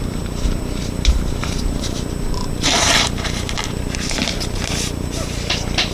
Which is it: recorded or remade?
remade